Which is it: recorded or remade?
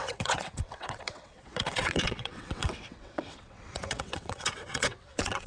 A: remade